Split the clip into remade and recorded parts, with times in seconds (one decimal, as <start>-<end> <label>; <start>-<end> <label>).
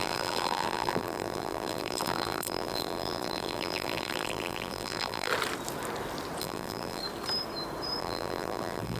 0.0-5.3 remade; 5.3-6.4 recorded; 6.4-7.0 remade; 7.0-8.0 recorded; 8.0-9.0 remade